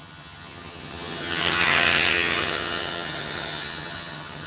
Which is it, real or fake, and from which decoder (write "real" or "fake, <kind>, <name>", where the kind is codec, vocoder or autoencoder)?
fake, vocoder, HiFi-GAN